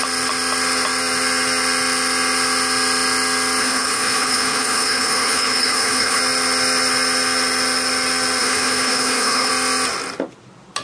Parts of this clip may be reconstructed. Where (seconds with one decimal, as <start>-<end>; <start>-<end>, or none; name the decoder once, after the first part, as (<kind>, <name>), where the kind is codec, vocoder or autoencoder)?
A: 3.6-6.2 (codec, HILCodec); 8.4-9.5